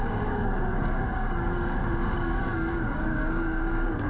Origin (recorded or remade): remade